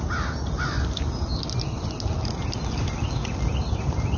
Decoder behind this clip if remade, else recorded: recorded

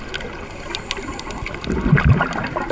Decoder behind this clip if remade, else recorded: recorded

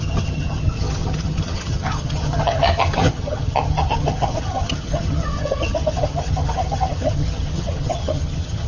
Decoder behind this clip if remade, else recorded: remade, vocoder, HiFi-GAN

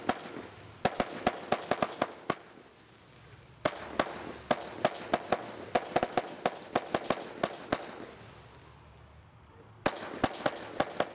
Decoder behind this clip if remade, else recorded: recorded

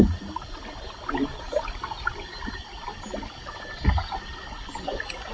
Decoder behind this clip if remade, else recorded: recorded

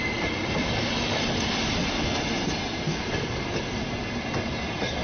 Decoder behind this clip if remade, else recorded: recorded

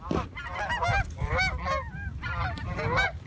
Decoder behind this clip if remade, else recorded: recorded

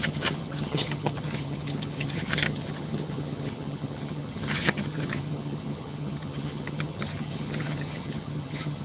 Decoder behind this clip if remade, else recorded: remade, vocoder, HiFi-GAN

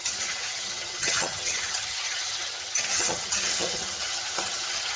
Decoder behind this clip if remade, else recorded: remade, vocoder, HiFi-GAN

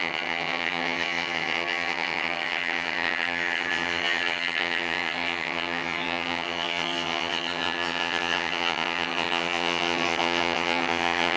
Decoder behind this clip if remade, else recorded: remade, vocoder, HiFi-GAN